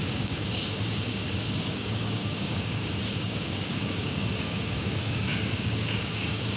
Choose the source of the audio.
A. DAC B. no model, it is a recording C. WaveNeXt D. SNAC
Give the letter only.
A